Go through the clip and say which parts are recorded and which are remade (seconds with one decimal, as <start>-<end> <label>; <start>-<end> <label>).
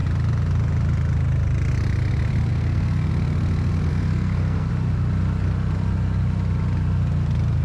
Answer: 0.0-2.5 recorded; 2.5-3.1 remade; 3.1-3.9 recorded; 3.9-4.7 remade; 4.7-7.6 recorded